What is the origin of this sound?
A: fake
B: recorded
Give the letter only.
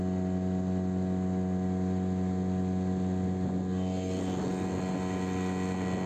B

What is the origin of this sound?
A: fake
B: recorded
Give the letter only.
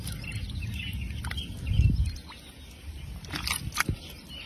B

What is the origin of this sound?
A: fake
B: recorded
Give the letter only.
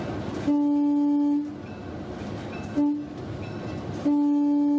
B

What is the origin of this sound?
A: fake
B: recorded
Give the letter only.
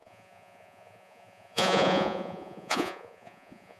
A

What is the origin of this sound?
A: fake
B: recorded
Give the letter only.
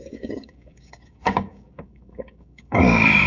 A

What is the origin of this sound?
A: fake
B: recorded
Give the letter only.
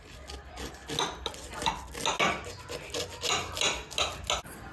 B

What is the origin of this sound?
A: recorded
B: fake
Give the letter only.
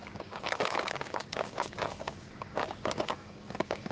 B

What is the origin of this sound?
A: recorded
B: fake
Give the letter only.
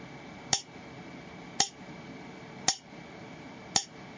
A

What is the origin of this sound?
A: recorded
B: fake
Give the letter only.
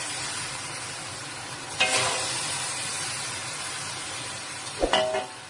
A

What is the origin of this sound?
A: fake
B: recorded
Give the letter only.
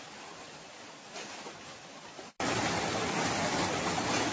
B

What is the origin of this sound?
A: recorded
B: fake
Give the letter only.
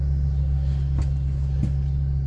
A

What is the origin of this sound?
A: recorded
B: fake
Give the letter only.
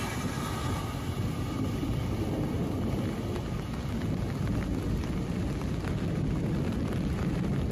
A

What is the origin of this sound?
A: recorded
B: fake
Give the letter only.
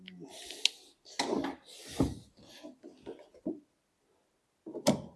A